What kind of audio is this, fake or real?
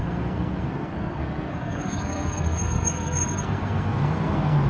fake